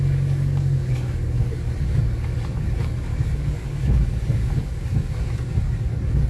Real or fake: fake